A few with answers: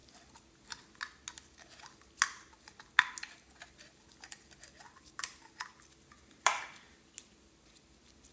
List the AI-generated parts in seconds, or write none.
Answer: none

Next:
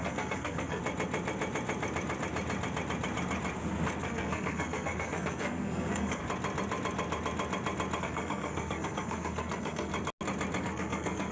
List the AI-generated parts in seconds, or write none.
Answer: 0.0-0.8 (codec, SNAC); 4.0-6.2; 8.0-9.9; 10.6-11.3

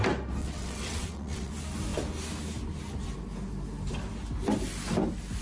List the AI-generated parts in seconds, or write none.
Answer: 0.4-1.5 (vocoder, WaveNeXt)

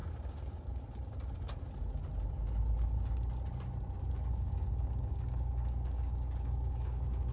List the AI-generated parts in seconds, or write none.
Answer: 4.1-7.3 (codec, DAC)

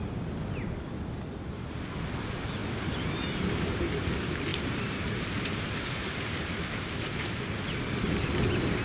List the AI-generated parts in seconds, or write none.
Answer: 2.6-4.1 (vocoder, BigVGAN v2); 4.5-7.4

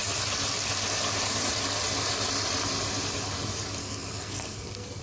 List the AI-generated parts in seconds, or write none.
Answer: 3.8-5.0 (codec, SNAC)

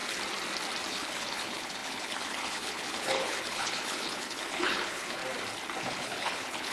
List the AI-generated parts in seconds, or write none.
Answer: 0.9-5.2 (codec, HILCodec); 5.8-6.7

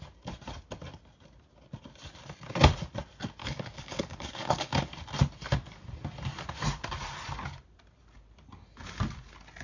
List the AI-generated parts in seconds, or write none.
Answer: 3.4-4.9 (codec, DAC)